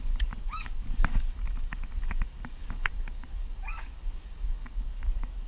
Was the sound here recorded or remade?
remade